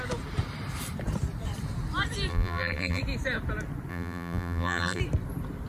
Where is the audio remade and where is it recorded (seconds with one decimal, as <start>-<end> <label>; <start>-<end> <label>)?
0.0-2.3 recorded; 2.3-3.0 remade; 3.0-3.9 recorded; 3.9-5.0 remade; 5.0-5.7 recorded